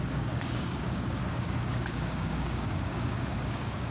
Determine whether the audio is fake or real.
fake